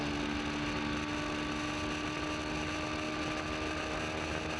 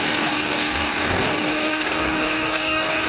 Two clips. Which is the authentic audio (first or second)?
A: first